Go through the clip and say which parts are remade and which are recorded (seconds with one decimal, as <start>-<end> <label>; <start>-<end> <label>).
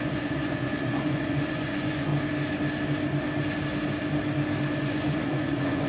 0.0-2.1 remade; 2.1-4.8 recorded; 4.8-5.9 remade